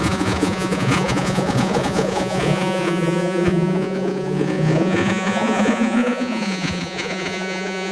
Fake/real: fake